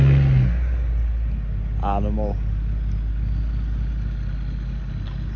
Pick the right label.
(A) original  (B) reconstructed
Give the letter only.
A